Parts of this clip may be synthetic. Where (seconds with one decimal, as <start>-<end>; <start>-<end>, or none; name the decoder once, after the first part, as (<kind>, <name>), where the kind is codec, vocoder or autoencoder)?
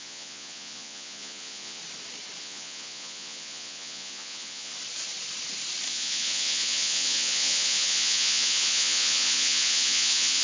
0.0-1.8 (vocoder, Vocos); 2.4-4.7; 5.9-10.4